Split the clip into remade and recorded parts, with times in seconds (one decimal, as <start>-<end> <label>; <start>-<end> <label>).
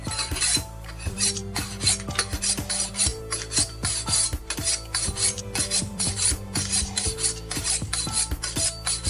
0.0-1.4 remade; 1.4-2.7 recorded; 2.7-9.1 remade